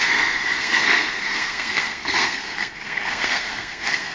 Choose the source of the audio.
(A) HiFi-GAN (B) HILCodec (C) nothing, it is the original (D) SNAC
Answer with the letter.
D